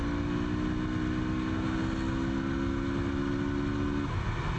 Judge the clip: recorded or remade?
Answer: recorded